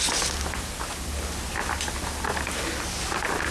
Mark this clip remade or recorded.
recorded